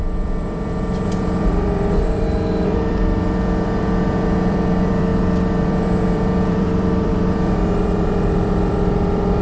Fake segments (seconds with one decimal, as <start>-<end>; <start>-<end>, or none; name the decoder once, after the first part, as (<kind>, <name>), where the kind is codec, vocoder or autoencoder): 0.0-9.4 (vocoder, BigVGAN v2)